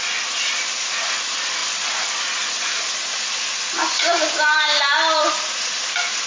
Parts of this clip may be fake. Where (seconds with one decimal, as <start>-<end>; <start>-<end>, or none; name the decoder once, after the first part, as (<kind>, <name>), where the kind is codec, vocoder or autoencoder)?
1.6-5.3 (vocoder, BigVGAN v2)